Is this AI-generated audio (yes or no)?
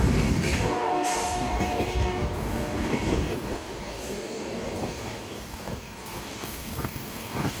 yes